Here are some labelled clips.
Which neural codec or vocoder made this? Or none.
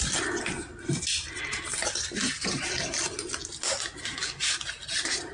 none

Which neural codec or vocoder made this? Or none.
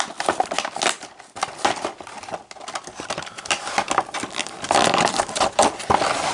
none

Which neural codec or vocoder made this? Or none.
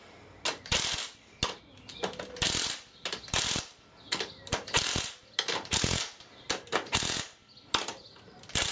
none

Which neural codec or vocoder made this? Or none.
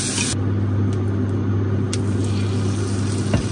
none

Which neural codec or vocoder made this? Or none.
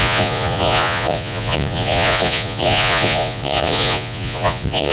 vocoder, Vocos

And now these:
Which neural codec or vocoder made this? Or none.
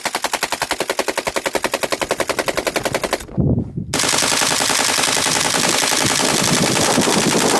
none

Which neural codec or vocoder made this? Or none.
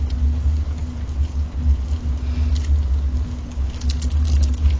none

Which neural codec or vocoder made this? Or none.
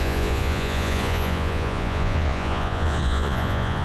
vocoder, Vocos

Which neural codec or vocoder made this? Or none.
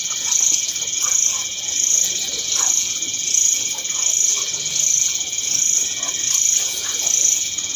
vocoder, Vocos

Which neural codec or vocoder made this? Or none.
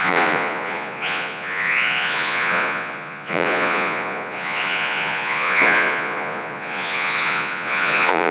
vocoder, Vocos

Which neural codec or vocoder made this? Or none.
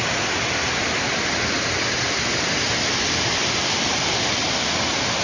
none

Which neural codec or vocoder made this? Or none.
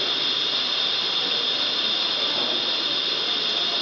none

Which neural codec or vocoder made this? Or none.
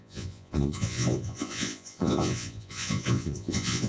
vocoder, Vocos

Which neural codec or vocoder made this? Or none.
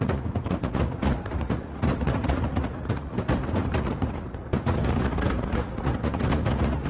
vocoder, Vocos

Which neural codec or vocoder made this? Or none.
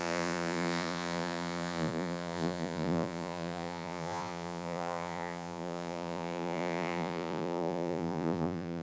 vocoder, Vocos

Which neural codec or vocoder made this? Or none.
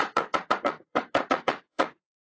vocoder, Vocos